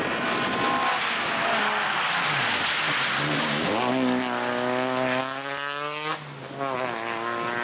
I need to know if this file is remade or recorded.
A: recorded